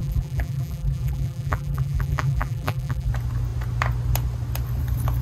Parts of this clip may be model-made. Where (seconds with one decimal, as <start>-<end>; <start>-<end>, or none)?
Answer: 0.0-3.1